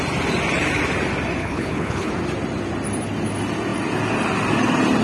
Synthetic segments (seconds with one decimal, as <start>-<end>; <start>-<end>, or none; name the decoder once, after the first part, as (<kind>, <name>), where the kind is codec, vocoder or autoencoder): 1.4-2.1 (codec, HILCodec)